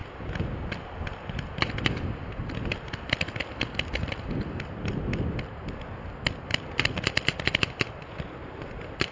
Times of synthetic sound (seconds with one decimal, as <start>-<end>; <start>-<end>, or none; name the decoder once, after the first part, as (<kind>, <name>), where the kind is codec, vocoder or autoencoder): none